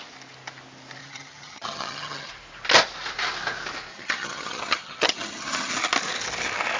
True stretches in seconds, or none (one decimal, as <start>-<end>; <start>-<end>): 0.0-1.0; 2.3-3.9; 5.7-6.8